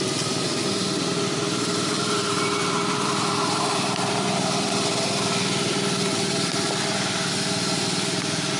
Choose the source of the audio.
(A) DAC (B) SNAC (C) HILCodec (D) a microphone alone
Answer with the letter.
D